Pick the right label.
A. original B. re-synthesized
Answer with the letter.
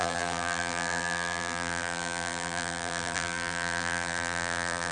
B